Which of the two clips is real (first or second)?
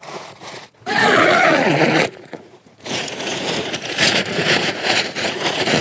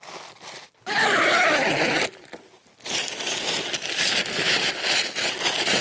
second